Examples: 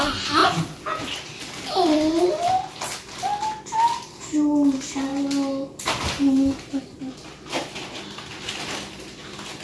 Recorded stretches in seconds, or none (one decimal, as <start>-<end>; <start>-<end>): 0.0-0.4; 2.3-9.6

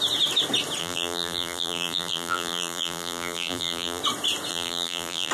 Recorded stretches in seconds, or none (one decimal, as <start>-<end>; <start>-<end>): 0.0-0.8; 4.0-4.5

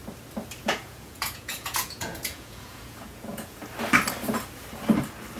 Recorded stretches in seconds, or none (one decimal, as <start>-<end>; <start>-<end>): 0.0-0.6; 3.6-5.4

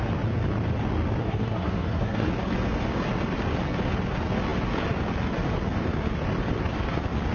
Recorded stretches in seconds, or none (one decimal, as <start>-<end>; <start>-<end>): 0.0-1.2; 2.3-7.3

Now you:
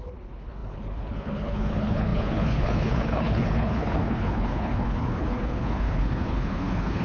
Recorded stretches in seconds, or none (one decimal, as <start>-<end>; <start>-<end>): none

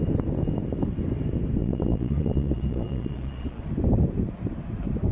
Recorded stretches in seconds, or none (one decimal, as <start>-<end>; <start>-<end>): 0.0-1.6; 3.6-5.1